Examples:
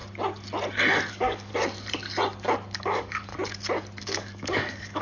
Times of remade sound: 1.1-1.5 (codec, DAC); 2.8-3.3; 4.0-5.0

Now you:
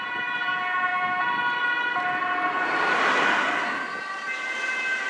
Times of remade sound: none

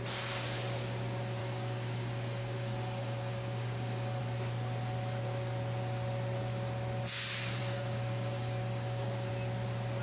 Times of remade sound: 1.4-4.2 (codec, DAC); 7.6-9.3